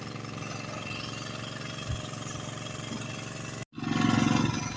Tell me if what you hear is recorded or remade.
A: recorded